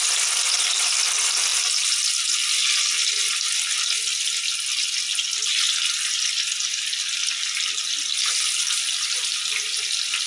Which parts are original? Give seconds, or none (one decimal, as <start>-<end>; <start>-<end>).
0.0-10.3